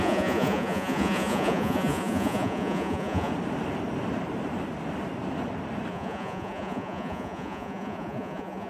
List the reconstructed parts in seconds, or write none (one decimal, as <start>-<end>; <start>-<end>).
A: 0.0-3.3; 5.9-8.7